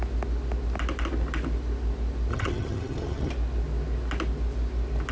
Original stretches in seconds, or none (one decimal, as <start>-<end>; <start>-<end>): 0.0-2.3; 3.3-5.1